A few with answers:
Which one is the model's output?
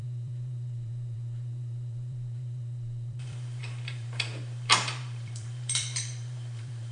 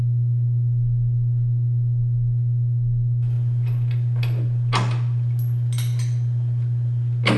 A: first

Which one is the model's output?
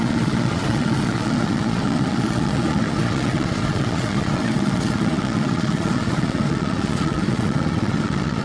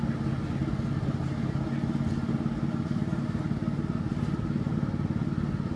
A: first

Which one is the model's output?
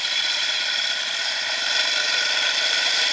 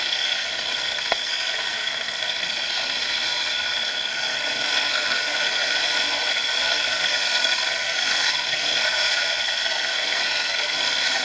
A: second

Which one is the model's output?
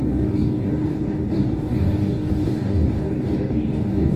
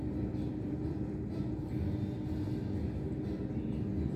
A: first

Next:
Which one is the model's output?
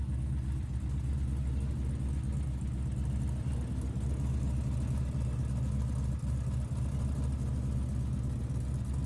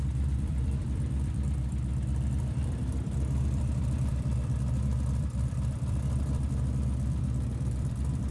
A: second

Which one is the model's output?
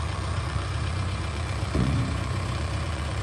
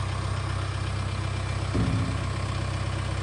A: first